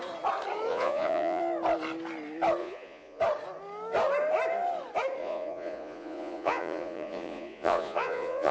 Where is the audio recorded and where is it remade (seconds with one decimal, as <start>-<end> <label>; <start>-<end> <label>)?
0.0-0.7 recorded; 0.7-1.4 remade; 1.4-2.6 recorded; 2.6-3.2 remade; 3.2-5.2 recorded; 5.2-8.5 remade